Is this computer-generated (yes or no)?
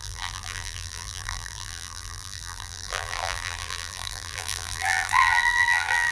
yes